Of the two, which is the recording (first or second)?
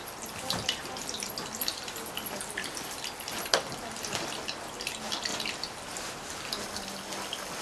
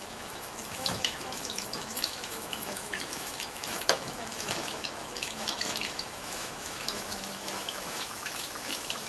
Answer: first